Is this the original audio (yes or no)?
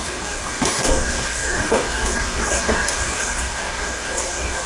no